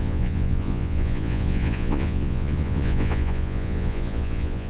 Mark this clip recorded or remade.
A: remade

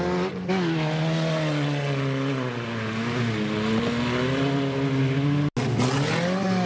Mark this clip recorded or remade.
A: recorded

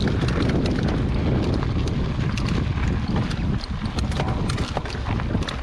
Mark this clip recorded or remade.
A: recorded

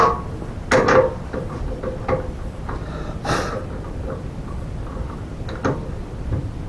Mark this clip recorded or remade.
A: recorded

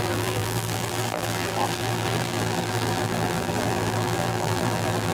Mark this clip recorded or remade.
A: remade